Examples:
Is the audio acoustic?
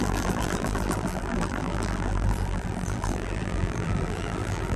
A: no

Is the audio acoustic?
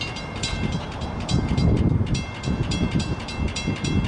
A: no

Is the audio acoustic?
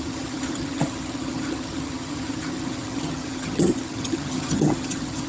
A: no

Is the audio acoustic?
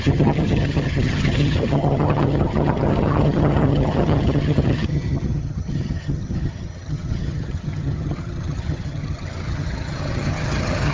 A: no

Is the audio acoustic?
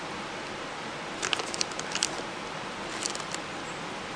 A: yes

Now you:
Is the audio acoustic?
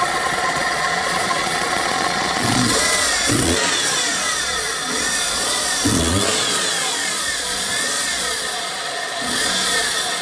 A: no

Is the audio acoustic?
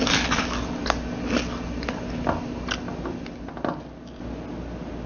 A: yes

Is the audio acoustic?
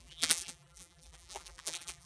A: no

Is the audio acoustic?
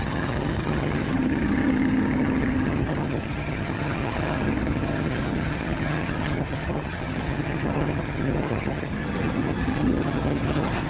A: no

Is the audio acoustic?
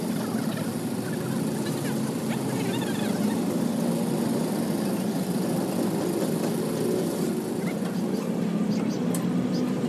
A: yes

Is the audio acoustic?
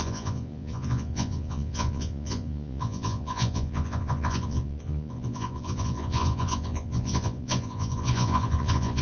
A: no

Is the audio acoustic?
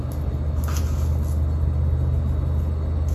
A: yes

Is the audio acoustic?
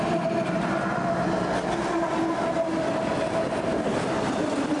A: yes